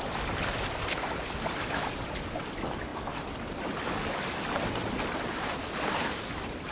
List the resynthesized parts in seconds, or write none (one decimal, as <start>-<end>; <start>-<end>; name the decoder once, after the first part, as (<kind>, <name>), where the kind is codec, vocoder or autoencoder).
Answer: none

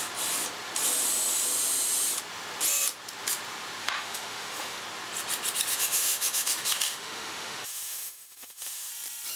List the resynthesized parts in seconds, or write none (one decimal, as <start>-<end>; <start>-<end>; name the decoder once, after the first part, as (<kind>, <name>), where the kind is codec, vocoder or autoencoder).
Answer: 3.8-4.8 (autoencoder, DAC-VAE); 5.7-8.9

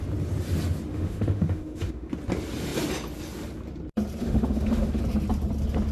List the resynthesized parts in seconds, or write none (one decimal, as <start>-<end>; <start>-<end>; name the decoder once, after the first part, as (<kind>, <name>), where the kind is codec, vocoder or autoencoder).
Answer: 0.9-2.1 (autoencoder, DAC-VAE); 4.2-5.0

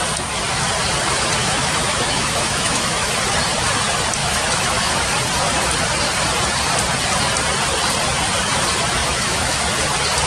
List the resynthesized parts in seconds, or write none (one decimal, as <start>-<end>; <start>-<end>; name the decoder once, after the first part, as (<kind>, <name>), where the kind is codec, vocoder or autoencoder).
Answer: 1.4-3.1 (autoencoder, DAC-VAE); 4.2-4.9; 9.0-9.6

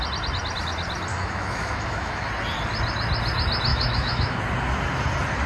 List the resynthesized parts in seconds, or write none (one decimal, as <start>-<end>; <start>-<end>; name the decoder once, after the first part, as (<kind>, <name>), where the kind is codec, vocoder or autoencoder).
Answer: 1.1-2.3 (autoencoder, DAC-VAE); 3.7-4.4

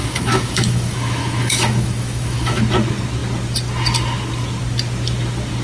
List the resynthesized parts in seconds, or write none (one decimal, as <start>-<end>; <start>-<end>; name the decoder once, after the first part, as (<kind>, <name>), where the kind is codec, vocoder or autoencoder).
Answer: 0.0-2.6 (autoencoder, DAC-VAE)